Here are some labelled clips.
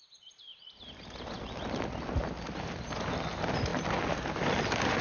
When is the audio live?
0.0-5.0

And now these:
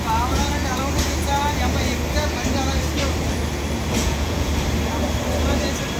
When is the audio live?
0.0-4.0; 4.5-6.0

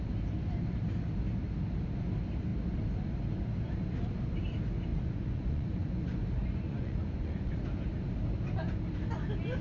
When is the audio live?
0.0-4.9; 7.5-9.6

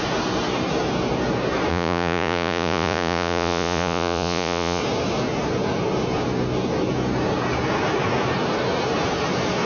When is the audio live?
0.0-1.7; 4.8-9.7

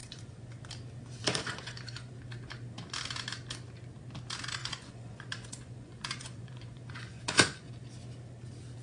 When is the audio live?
0.6-1.2; 2.1-4.6; 7.7-8.8